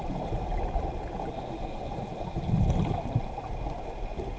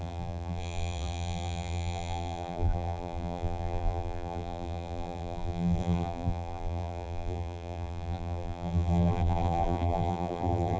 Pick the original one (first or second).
first